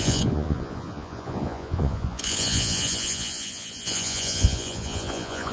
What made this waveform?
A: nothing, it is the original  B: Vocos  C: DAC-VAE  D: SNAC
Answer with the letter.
B